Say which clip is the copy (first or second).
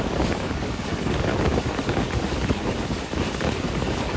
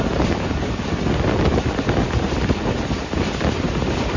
first